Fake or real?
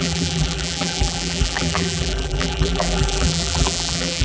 fake